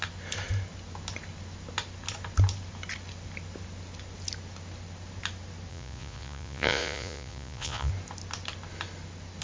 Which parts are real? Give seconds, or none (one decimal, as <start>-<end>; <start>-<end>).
0.0-5.7; 7.9-9.4